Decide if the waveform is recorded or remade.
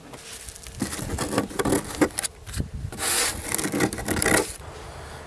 recorded